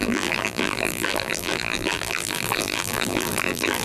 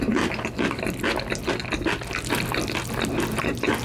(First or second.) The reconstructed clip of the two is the first